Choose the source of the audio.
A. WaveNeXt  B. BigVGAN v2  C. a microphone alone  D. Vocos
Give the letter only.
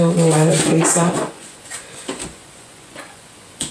D